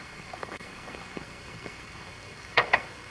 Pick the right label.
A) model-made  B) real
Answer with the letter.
A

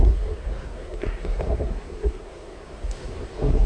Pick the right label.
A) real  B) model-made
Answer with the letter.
B